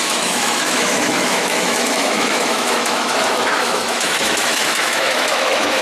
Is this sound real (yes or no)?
no